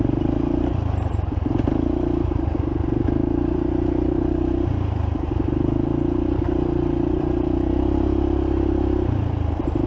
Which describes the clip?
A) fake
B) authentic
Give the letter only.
A